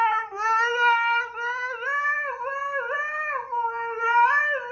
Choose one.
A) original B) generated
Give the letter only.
A